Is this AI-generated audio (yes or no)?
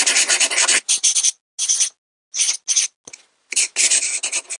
no